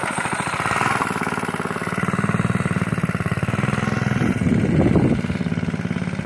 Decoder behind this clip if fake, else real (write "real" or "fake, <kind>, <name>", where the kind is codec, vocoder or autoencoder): real